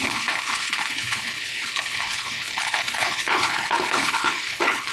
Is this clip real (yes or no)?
no